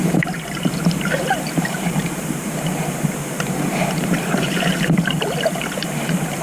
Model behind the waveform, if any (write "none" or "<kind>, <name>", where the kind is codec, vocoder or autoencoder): vocoder, BigVGAN v2